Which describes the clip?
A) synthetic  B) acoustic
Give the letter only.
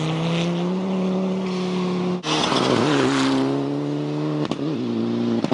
B